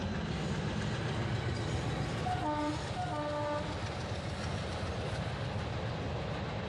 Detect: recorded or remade recorded